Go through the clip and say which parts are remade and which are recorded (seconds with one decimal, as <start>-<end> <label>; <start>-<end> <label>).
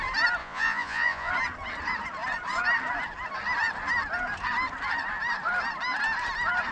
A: 0.0-0.4 recorded; 0.4-1.3 remade; 1.3-6.7 recorded